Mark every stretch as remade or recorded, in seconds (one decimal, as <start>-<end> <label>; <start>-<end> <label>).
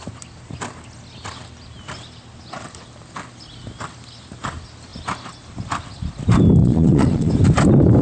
0.0-6.6 recorded; 6.6-7.3 remade; 7.3-8.0 recorded